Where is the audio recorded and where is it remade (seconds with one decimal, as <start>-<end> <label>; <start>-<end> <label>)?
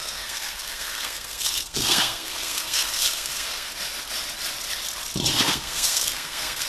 0.0-3.7 remade; 3.7-5.3 recorded; 5.3-6.7 remade